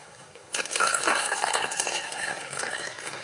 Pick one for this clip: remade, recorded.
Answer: remade